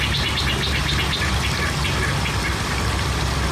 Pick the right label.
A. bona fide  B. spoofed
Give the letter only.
A